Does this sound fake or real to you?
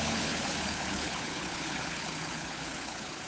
fake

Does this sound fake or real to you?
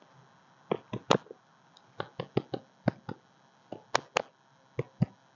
real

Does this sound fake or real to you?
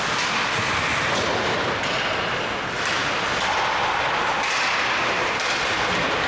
real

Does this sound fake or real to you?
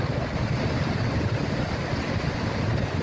real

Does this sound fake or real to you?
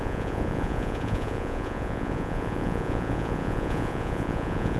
fake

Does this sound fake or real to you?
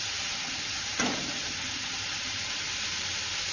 real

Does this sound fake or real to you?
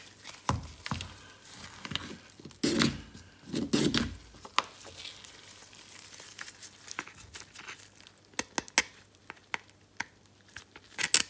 real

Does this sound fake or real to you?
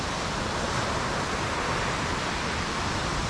real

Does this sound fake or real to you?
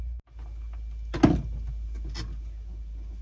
real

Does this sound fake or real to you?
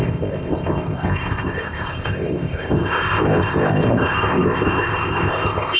fake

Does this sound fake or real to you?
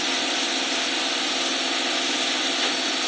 real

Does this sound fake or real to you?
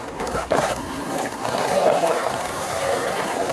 fake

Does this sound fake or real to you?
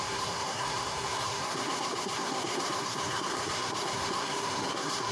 fake